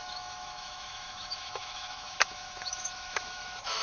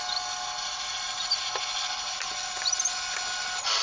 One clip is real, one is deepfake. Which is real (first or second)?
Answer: second